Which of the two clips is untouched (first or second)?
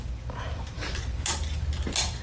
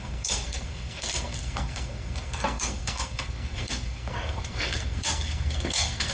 first